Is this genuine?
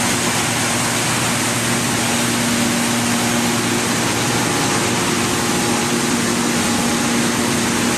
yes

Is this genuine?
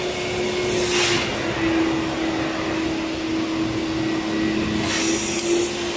yes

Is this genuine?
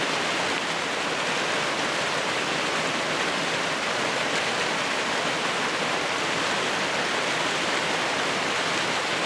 yes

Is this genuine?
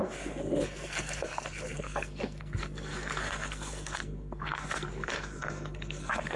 no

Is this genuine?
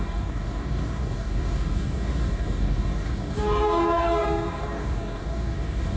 no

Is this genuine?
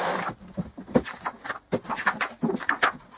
yes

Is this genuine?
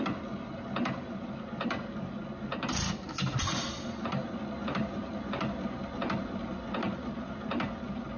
yes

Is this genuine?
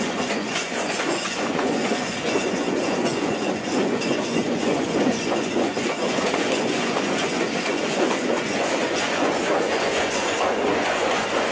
no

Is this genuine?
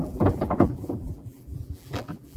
no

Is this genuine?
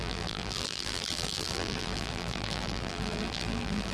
no